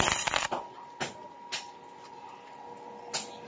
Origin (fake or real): real